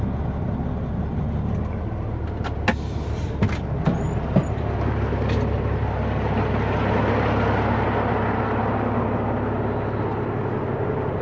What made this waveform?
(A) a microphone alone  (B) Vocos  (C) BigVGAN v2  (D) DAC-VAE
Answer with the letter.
A